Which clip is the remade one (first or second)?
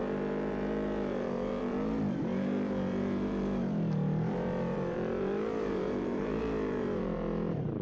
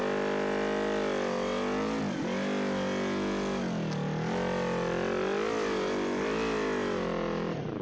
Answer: first